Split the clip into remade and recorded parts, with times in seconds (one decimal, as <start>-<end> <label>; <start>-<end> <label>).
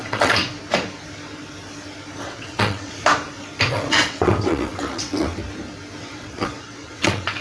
0.0-0.4 remade; 0.4-2.2 recorded; 2.2-3.0 remade; 3.0-3.7 recorded; 3.7-5.4 remade; 5.4-6.0 recorded; 6.0-7.4 remade